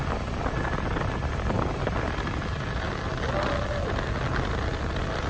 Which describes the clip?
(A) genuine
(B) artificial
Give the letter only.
A